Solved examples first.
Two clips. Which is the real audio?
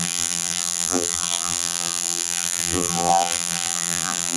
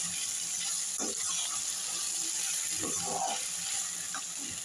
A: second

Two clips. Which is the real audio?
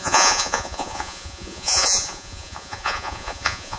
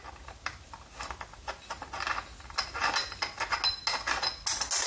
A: second